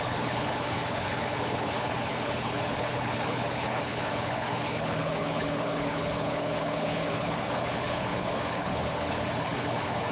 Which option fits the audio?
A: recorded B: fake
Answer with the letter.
B